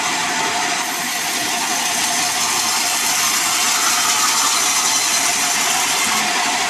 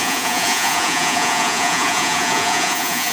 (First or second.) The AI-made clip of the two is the second